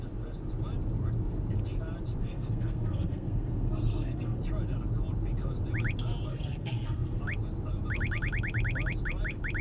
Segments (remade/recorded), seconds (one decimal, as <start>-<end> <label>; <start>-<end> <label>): 0.0-2.2 recorded; 2.2-4.4 remade; 4.4-6.3 recorded; 6.3-7.2 remade; 7.2-9.6 recorded